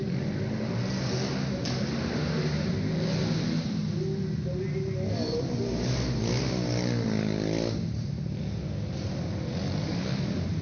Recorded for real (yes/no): yes